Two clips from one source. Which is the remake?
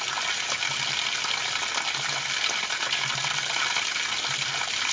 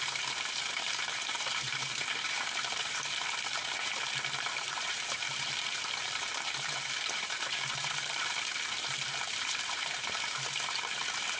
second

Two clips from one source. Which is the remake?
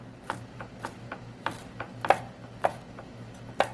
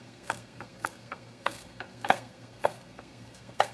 second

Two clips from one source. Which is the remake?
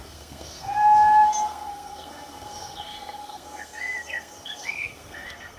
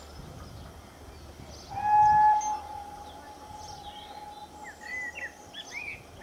first